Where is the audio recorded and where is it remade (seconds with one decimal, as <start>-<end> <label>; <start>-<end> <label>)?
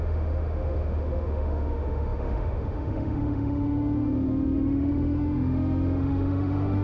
0.0-6.8 remade